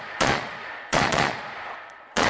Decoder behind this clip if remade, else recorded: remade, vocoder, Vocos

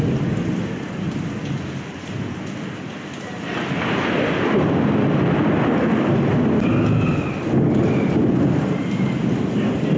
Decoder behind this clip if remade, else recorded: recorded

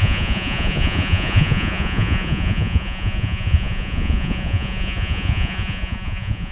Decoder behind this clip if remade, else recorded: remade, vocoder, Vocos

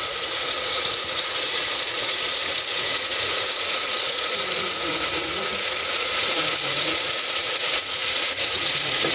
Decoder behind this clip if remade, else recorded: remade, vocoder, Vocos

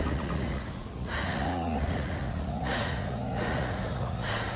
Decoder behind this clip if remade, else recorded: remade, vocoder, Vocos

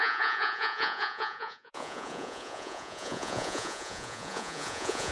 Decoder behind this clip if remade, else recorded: remade, vocoder, Vocos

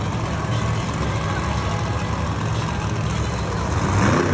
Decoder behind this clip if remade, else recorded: recorded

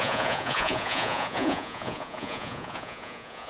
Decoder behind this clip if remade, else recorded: remade, vocoder, Vocos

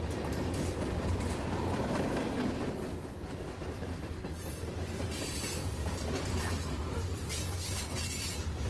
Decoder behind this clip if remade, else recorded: recorded